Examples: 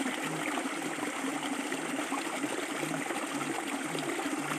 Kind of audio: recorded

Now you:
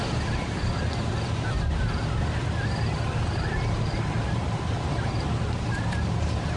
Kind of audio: recorded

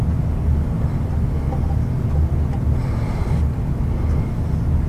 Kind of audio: recorded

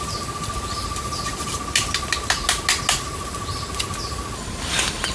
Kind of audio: recorded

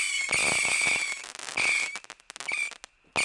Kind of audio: recorded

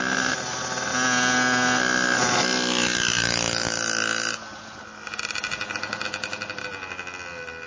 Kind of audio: recorded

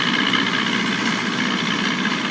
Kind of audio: recorded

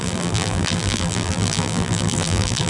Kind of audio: remade